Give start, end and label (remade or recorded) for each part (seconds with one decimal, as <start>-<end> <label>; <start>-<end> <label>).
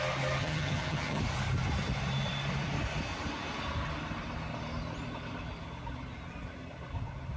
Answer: 0.0-0.4 recorded; 0.4-1.2 remade; 1.2-7.4 recorded